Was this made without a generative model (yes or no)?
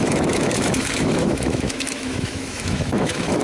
no